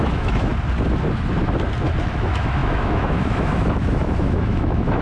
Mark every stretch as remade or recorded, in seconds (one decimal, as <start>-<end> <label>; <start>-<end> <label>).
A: 0.0-0.5 remade; 0.5-2.0 recorded; 2.0-5.0 remade